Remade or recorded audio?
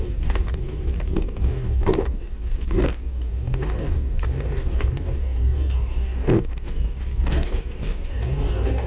remade